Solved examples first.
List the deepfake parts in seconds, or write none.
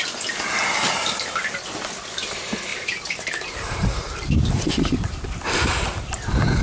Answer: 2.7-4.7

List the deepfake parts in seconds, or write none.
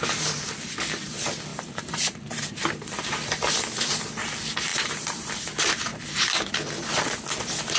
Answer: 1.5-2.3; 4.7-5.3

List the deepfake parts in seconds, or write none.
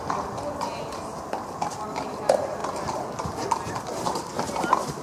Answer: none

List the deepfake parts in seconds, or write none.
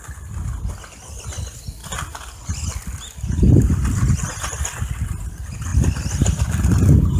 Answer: none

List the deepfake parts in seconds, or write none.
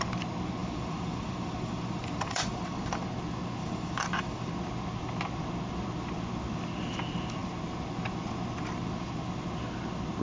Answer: 0.6-3.0; 3.6-4.5